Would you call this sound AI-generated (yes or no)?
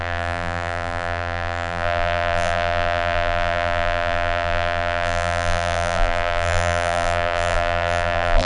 yes